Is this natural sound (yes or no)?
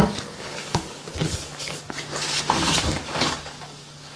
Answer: no